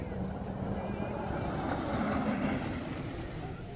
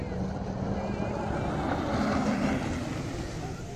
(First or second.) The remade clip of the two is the first